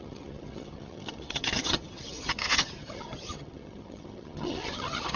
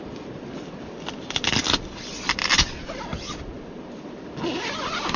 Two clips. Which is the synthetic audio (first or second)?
first